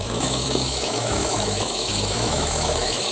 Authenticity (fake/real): fake